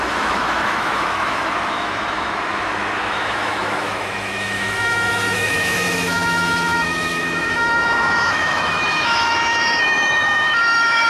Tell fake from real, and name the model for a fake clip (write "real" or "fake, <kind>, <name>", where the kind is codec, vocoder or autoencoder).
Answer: fake, autoencoder, DAC-VAE